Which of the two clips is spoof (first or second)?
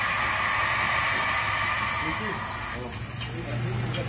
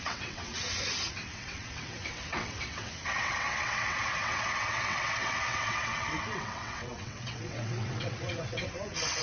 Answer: second